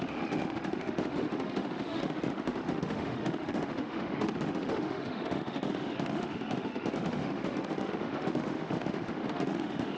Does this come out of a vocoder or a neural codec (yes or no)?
yes